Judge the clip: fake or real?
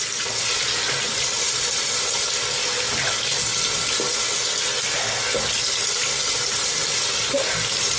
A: real